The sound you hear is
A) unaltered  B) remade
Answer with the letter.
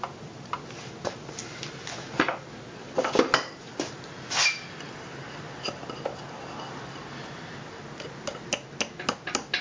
A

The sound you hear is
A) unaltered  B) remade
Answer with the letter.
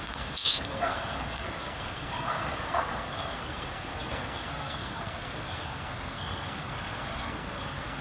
B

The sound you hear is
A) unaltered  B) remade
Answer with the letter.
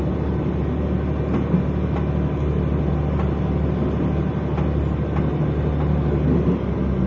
A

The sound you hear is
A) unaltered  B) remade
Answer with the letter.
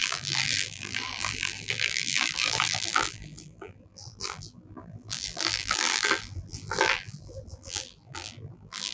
B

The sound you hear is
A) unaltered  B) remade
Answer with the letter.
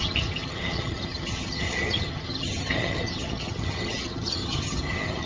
B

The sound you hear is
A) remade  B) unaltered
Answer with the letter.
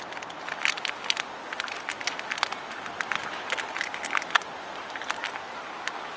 B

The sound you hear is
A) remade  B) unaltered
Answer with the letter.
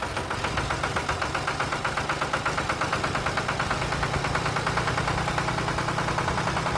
B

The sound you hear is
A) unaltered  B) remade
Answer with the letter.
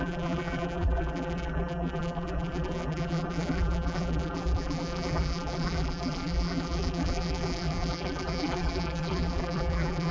B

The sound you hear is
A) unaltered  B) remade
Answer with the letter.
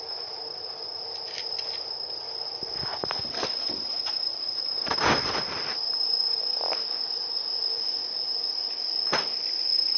A